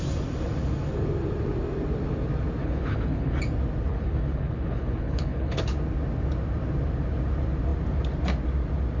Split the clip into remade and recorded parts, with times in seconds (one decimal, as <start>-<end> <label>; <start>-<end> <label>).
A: 0.0-2.6 recorded; 2.6-3.4 remade; 3.4-3.9 recorded; 3.9-5.6 remade; 5.6-9.0 recorded